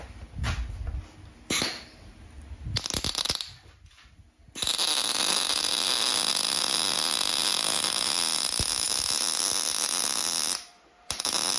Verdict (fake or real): real